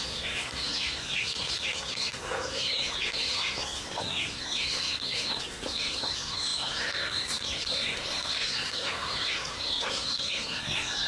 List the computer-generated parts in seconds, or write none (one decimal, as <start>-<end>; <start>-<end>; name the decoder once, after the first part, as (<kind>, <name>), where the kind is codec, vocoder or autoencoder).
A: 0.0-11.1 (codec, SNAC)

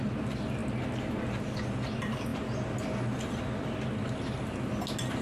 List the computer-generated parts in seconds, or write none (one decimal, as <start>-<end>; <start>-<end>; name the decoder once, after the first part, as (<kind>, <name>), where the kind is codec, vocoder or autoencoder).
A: none

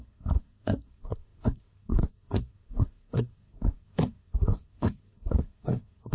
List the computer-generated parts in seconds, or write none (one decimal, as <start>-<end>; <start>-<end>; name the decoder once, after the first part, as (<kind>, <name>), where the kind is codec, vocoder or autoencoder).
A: 0.0-6.1 (codec, SNAC)

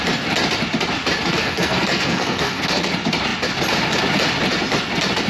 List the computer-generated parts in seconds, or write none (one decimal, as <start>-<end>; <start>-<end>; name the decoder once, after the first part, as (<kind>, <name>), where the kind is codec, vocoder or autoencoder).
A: 1.3-2.9 (codec, SNAC)

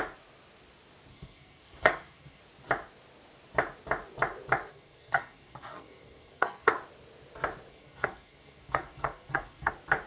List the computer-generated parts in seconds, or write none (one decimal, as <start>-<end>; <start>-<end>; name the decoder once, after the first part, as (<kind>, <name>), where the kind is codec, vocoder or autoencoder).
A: 1.1-2.4 (codec, SNAC); 4.7-6.7; 7.7-9.7

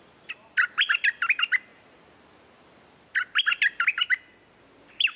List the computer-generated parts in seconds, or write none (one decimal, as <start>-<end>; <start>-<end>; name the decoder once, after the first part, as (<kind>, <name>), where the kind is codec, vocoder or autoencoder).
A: none